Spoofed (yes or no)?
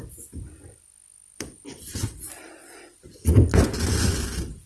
no